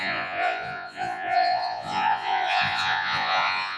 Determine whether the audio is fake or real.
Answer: fake